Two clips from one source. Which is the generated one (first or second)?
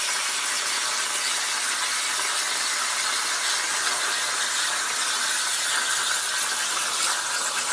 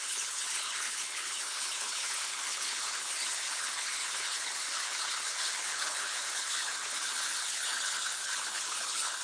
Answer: second